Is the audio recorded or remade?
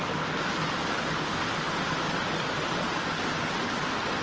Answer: recorded